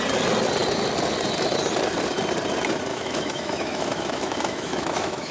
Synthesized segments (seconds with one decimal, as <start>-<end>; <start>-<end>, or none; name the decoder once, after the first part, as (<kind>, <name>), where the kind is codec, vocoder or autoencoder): 2.9-5.3 (autoencoder, DAC-VAE)